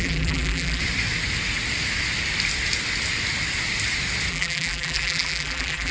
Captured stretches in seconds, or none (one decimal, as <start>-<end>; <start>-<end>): 0.8-4.3